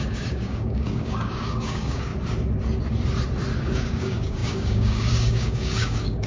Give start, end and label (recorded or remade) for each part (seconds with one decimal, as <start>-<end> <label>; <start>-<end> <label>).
0.0-2.1 remade; 2.1-3.6 recorded; 3.6-6.3 remade